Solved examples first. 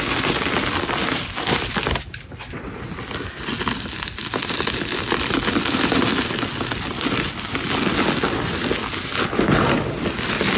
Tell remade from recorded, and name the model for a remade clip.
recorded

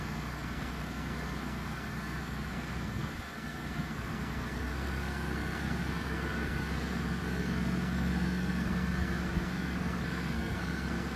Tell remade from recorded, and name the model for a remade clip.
remade, codec, SNAC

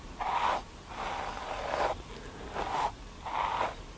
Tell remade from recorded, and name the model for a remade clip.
recorded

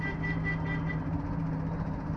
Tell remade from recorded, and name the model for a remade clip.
recorded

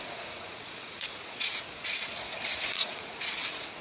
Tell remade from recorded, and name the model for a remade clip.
remade, vocoder, Vocos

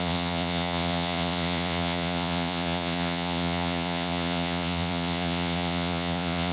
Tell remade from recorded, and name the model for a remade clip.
remade, vocoder, Vocos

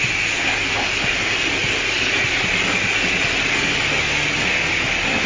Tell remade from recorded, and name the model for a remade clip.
recorded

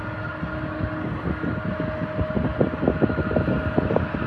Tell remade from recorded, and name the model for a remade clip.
recorded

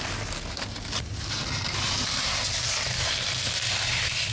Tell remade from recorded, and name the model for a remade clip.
recorded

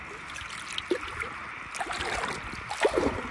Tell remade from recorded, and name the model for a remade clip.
recorded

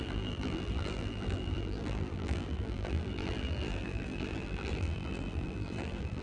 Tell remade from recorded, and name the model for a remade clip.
remade, vocoder, BigVGAN v2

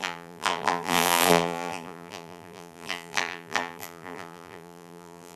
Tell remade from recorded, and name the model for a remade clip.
remade, vocoder, BigVGAN v2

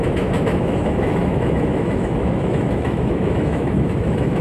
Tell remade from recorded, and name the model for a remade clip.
remade, autoencoder, DAC-VAE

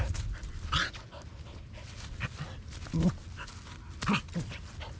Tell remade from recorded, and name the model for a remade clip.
recorded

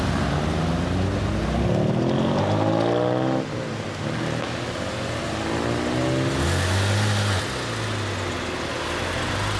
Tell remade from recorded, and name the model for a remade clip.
recorded